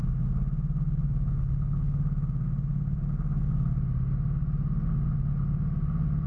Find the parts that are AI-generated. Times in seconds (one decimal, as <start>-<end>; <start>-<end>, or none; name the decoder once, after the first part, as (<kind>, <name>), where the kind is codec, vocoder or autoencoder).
none